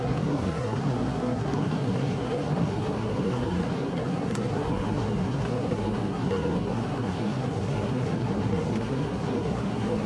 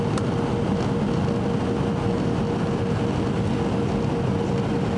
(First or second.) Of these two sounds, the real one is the second